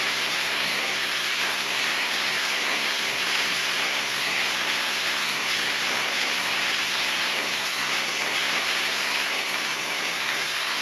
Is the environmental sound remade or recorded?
remade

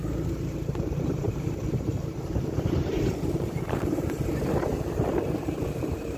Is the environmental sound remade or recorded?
remade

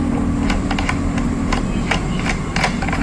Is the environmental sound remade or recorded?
recorded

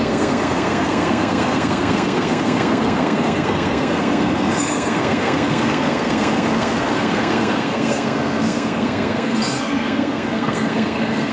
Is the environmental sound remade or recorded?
remade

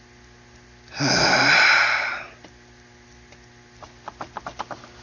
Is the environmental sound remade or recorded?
recorded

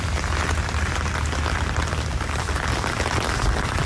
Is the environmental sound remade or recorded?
recorded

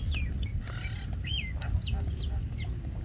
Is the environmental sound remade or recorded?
recorded